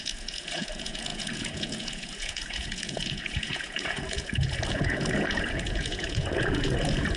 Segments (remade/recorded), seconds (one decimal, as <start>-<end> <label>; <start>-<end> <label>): 0.0-7.2 remade